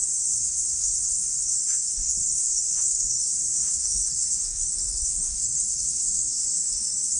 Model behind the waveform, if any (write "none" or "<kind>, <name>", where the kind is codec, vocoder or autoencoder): codec, SNAC